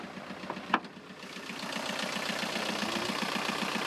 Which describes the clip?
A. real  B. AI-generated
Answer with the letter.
A